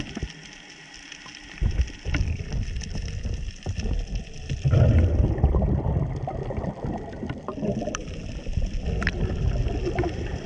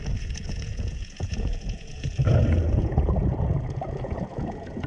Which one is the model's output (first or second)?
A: second